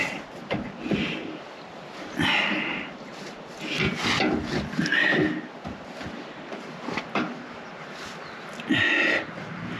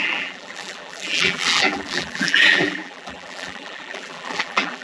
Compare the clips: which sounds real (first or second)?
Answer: first